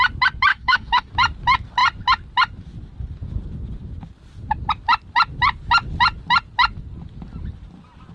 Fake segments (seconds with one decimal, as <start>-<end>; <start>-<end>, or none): 0.5-1.1